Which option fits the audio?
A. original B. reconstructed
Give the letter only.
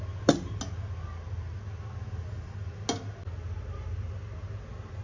A